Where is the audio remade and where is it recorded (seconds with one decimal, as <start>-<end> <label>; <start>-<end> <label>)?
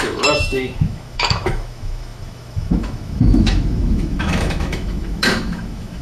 0.0-6.0 remade